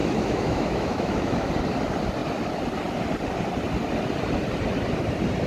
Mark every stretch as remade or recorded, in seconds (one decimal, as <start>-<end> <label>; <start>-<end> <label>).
0.0-1.5 remade; 1.5-5.5 recorded